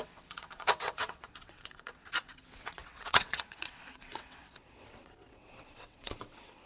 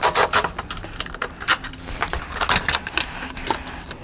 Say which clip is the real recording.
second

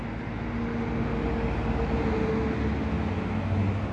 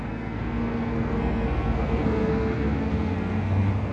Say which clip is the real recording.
first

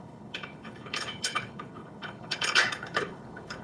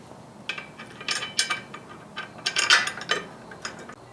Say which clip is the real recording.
second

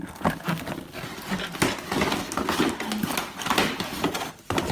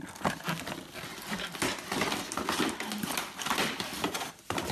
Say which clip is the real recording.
first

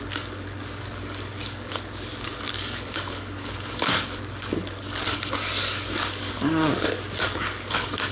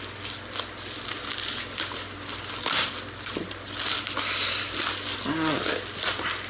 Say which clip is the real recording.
second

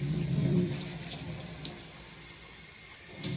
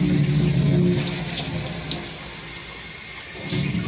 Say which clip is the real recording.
second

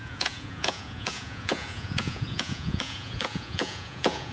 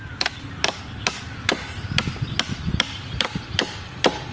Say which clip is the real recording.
second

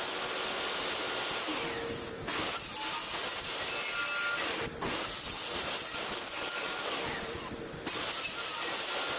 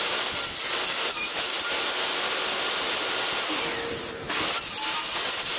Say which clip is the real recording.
first